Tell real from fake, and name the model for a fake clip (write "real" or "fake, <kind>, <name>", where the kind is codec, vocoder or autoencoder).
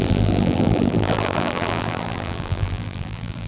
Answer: fake, vocoder, BigVGAN v2